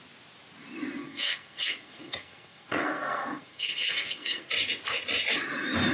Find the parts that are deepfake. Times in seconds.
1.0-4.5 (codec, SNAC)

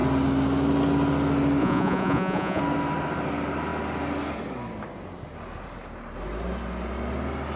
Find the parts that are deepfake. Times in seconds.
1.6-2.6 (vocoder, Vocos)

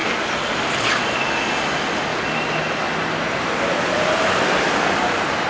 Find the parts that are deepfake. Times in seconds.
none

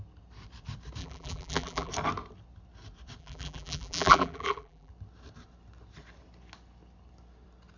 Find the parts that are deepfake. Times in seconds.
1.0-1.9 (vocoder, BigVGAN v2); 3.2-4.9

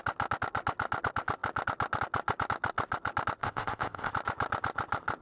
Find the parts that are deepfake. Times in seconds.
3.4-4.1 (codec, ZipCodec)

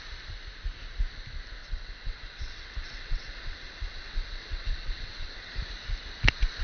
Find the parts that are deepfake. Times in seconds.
1.6-5.6 (vocoder, WaveNeXt)

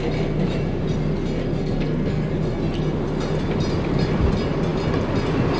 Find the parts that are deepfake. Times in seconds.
1.6-2.3 (codec, SNAC)

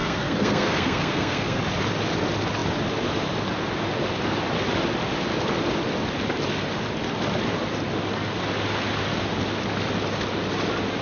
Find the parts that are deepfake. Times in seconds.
0.0-1.6 (codec, SNAC)